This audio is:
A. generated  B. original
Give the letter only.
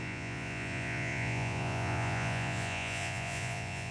A